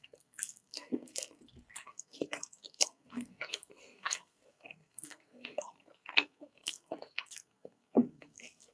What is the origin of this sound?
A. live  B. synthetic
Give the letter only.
B